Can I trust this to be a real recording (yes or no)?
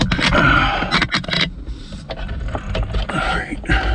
yes